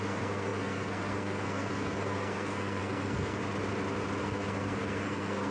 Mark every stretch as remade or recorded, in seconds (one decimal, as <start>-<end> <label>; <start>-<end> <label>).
0.0-3.4 remade; 3.4-4.2 recorded; 4.2-5.5 remade